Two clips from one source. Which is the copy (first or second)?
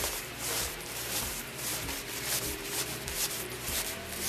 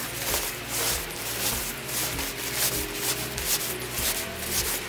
first